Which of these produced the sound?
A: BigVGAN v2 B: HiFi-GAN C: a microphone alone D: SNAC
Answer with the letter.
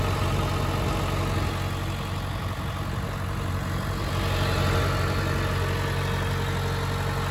C